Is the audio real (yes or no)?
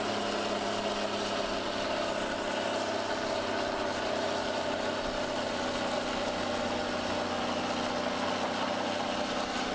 yes